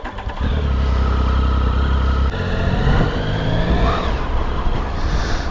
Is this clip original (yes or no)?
yes